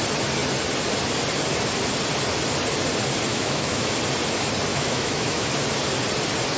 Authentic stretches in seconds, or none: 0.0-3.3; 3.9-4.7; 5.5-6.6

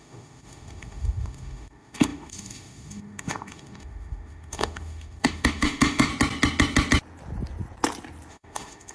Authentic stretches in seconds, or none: 6.1-8.3

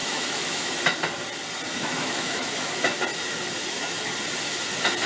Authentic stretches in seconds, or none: 0.7-1.7; 2.8-5.1

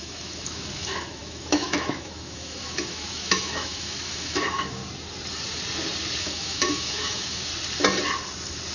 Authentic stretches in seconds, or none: 4.8-6.2; 7.5-8.7

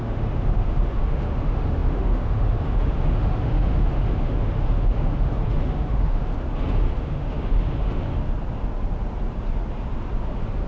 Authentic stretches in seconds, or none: 6.3-7.0; 8.2-10.7

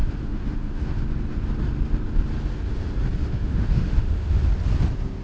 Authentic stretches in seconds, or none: 1.0-3.2; 4.4-5.2

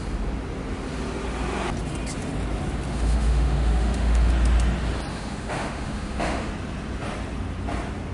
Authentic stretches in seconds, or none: 0.0-2.9; 4.3-5.1; 6.5-8.1

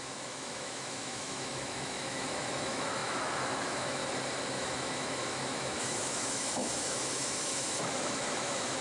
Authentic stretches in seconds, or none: 4.0-4.5